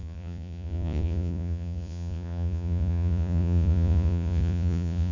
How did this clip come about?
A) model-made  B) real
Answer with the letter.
A